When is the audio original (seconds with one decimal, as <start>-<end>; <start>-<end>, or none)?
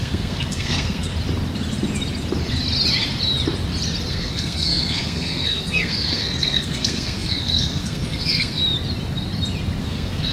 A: 1.1-4.1; 8.6-9.8